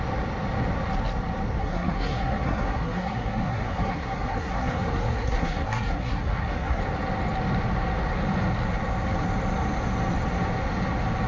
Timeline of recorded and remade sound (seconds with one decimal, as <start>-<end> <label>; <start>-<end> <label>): 0.0-1.6 recorded; 1.6-6.8 remade; 6.8-11.3 recorded